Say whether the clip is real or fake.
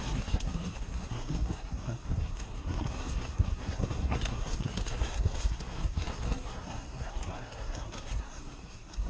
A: fake